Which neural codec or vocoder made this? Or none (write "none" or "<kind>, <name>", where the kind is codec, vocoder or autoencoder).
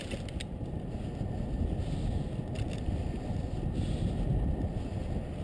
none